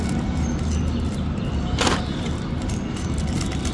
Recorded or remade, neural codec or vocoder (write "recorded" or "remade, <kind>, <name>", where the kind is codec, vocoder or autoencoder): recorded